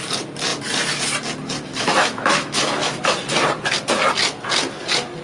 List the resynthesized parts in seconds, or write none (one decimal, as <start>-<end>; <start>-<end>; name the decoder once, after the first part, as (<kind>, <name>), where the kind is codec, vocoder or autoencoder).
1.7-3.0 (autoencoder, DAC-VAE)